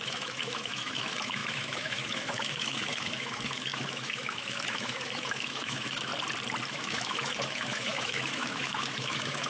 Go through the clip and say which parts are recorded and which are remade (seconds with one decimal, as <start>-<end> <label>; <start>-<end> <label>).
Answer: 0.0-6.1 remade; 6.1-6.7 recorded; 6.7-9.5 remade